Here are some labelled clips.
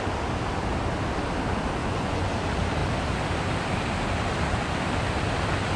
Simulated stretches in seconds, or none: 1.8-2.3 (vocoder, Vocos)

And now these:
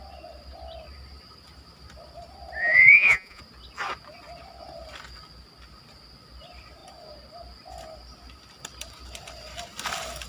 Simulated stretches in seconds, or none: 2.6-3.4 (vocoder, Vocos)

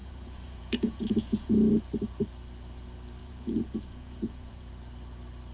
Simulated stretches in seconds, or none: 0.0-1.8 (vocoder, Vocos); 3.2-4.7

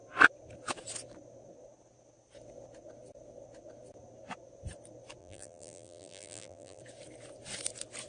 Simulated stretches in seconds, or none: 5.2-6.8 (vocoder, BigVGAN v2)

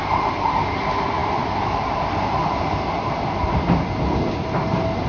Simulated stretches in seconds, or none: 1.2-4.3 (vocoder, BigVGAN v2)